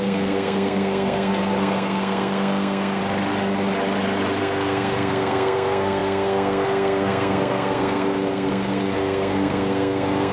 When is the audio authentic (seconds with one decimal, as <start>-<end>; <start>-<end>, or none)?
3.0-4.4